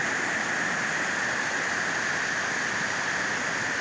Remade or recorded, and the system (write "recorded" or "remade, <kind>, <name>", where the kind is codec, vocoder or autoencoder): recorded